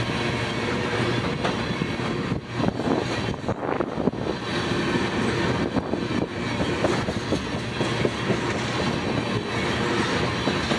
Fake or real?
real